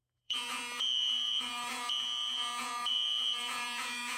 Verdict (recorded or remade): remade